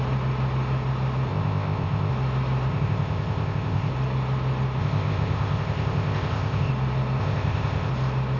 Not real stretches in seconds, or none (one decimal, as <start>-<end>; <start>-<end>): 1.3-2.1; 2.7-3.9; 4.8-6.7; 7.2-7.9